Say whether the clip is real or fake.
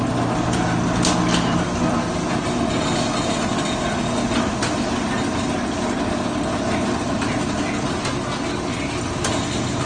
real